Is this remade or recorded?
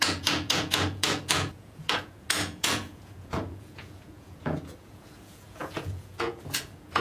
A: remade